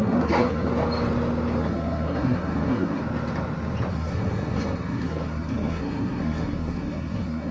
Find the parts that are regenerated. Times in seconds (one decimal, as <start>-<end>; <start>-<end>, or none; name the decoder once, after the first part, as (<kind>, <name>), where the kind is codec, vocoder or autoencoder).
0.0-0.7 (codec, SNAC); 1.6-3.0; 3.9-7.5